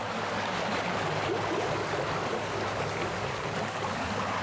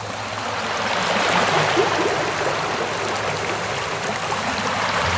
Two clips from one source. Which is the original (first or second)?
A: second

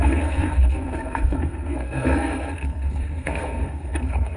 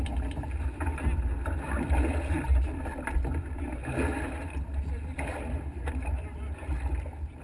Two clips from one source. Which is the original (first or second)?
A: second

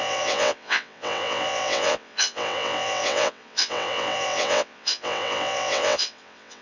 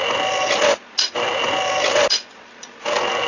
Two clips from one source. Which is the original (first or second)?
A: second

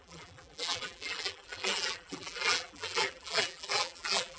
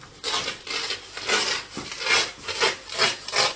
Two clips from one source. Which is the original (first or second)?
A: second